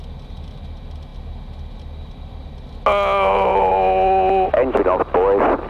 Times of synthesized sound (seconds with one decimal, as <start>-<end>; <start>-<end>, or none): none